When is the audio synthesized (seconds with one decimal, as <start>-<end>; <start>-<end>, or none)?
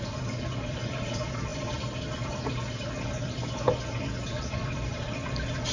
0.0-5.7